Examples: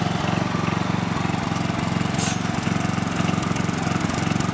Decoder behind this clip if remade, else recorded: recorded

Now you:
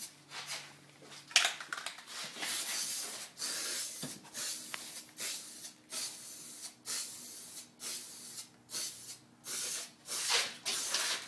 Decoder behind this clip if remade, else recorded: recorded